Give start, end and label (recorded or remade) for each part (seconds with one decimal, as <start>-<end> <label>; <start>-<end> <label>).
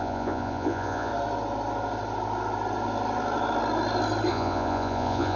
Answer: 0.0-1.1 remade; 1.1-4.3 recorded; 4.3-5.4 remade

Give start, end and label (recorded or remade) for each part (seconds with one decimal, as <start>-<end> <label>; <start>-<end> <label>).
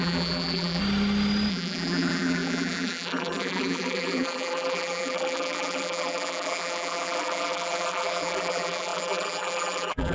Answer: 0.0-0.8 remade; 0.8-1.5 recorded; 1.5-10.1 remade